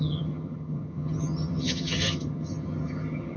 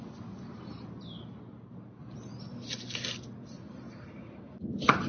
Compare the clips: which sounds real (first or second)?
second